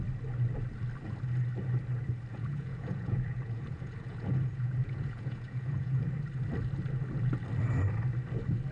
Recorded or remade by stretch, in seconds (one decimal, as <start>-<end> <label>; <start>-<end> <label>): 0.0-2.3 recorded; 2.3-6.0 remade; 6.0-8.7 recorded